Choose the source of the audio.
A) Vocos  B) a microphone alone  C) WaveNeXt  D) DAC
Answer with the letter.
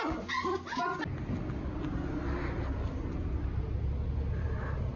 B